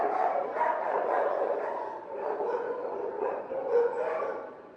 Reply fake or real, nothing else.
fake